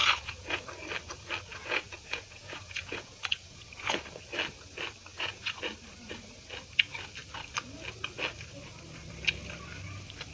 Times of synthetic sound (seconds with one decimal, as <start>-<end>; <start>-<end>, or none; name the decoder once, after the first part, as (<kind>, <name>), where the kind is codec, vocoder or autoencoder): 0.0-0.6 (vocoder, Vocos); 1.5-4.0; 5.1-5.6